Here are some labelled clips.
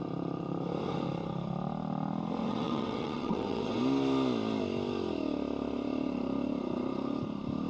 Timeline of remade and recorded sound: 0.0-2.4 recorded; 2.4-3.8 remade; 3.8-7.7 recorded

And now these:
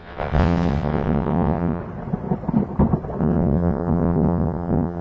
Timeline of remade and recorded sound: 0.0-1.8 remade; 1.8-3.2 recorded; 3.2-5.0 remade